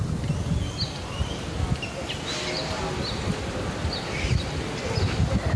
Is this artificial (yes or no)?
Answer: no